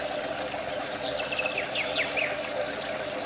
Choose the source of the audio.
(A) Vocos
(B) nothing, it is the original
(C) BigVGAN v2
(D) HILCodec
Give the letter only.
B